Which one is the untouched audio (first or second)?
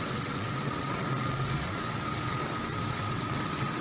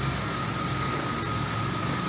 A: second